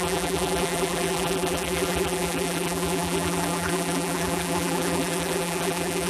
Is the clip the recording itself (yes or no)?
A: no